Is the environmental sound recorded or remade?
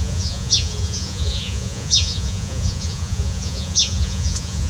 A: remade